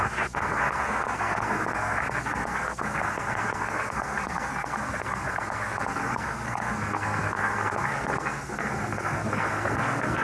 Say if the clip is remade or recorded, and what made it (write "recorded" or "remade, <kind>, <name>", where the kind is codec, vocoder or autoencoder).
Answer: remade, codec, SNAC